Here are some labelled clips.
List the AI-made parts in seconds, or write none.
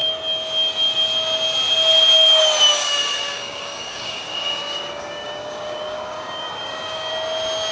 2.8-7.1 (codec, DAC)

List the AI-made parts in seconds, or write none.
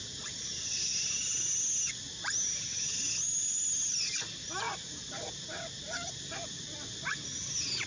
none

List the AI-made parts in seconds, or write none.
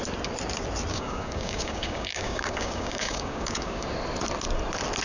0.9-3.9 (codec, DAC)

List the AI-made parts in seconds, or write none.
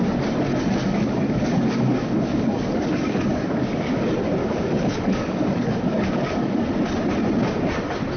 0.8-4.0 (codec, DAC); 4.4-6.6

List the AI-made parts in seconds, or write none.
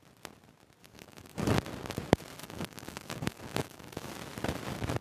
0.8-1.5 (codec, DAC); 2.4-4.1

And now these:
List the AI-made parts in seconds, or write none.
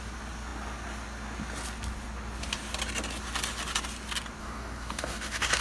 4.4-5.6 (codec, DAC)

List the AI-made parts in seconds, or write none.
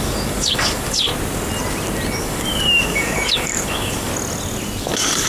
0.0-1.1 (codec, DAC); 2.2-4.1; 4.8-5.3